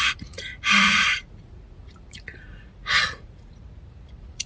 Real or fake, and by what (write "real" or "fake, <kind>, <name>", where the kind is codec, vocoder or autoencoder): fake, vocoder, Vocos